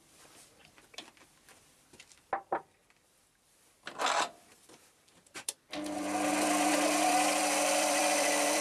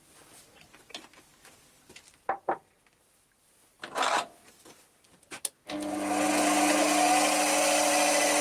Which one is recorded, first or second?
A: second